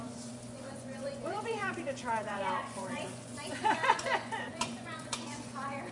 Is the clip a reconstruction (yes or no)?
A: yes